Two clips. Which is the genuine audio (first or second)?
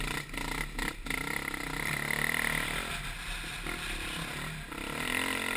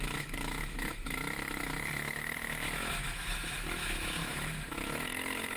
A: first